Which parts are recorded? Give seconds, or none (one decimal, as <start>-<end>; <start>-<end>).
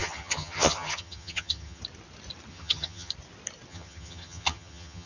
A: 1.8-2.5; 3.1-3.7